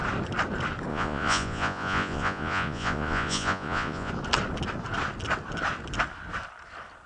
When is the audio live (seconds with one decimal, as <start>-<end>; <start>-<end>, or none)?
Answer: 0.0-0.9; 4.1-7.1